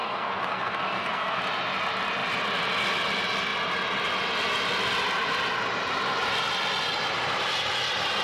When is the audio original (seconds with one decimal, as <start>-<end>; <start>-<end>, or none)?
1.4-8.2